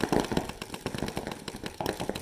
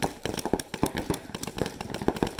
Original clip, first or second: first